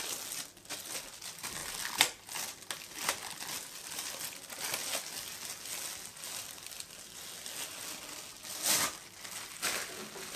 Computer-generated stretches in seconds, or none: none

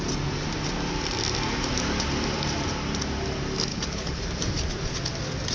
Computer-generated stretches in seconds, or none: 3.7-4.2 (codec, HILCodec)

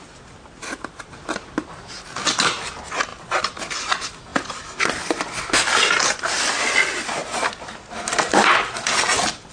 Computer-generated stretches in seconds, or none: none

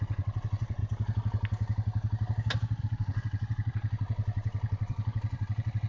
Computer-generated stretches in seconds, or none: 0.0-0.8 (vocoder, WaveNeXt); 2.8-5.9

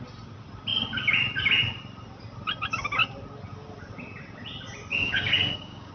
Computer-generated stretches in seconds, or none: 4.9-5.9 (codec, DAC)